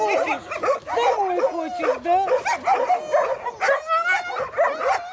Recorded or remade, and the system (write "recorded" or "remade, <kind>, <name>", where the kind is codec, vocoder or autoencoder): recorded